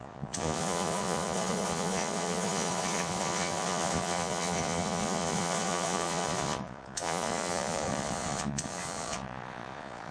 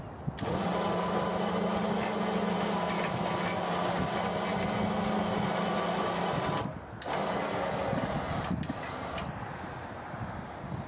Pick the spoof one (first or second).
first